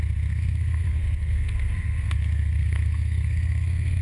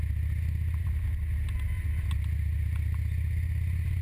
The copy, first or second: first